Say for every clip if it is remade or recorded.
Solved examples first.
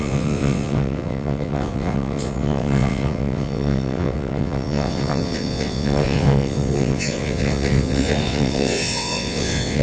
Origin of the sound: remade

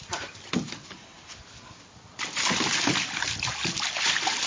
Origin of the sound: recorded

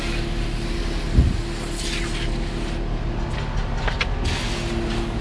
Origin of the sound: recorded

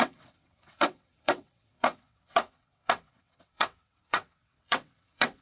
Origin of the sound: remade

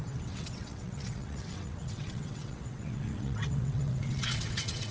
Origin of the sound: remade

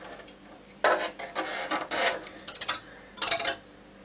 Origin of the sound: recorded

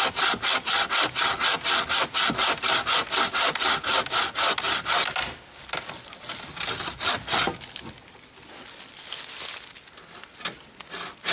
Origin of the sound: recorded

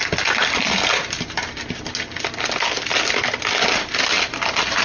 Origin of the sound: recorded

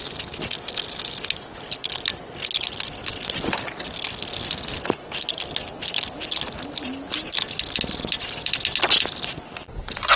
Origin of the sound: recorded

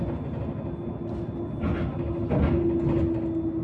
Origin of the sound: recorded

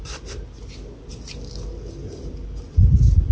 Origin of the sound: recorded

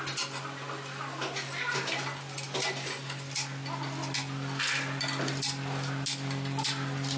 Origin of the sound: recorded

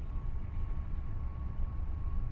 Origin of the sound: remade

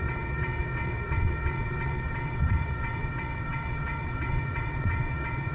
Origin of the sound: remade